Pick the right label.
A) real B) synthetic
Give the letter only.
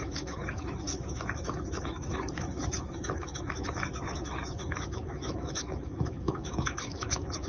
B